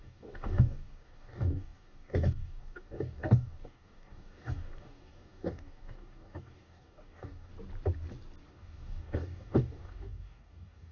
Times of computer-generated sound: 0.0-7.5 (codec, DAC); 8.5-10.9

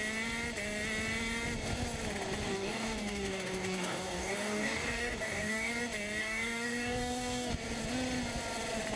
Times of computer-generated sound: 2.5-5.7 (codec, DAC); 6.2-7.5

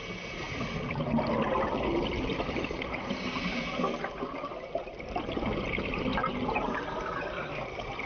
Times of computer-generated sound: none

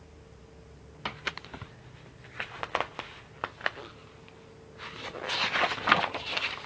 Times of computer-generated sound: none

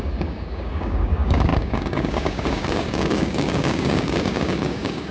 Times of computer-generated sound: 0.0-5.1 (codec, DAC)

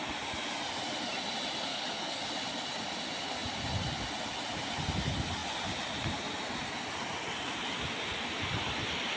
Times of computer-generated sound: 1.7-2.3 (codec, DAC)

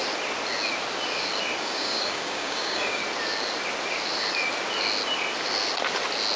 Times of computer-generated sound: 1.6-3.0 (codec, DAC)